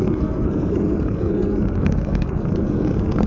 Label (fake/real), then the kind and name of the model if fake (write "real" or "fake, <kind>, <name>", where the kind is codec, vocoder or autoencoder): fake, codec, SNAC